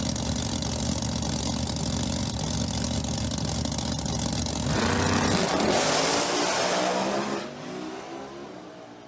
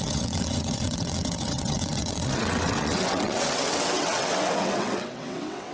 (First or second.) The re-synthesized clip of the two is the second